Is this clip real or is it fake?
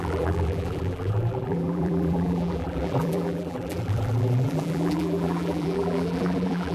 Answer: fake